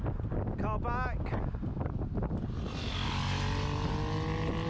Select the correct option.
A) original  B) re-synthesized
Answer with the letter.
A